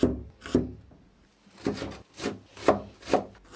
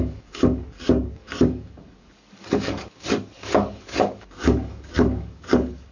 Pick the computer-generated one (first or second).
second